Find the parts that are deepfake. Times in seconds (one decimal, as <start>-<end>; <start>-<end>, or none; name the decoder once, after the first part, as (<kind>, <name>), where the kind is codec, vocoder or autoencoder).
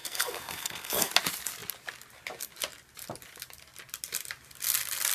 0.0-1.1 (codec, SNAC)